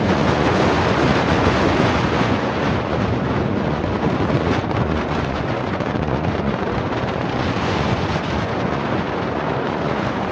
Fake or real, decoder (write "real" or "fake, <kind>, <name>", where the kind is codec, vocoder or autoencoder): fake, vocoder, Vocos